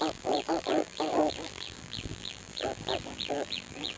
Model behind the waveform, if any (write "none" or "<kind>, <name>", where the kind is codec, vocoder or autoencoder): vocoder, BigVGAN v2